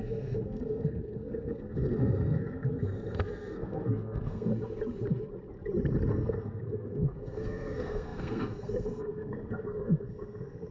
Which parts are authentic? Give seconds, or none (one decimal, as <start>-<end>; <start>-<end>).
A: 4.5-6.1